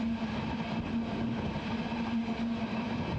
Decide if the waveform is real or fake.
fake